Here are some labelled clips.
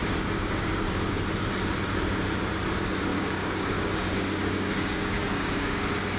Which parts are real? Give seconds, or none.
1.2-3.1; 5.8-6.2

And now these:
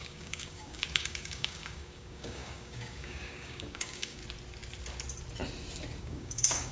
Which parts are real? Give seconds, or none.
4.2-6.0

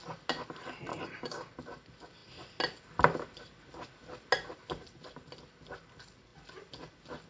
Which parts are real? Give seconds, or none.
0.0-0.9; 1.5-7.3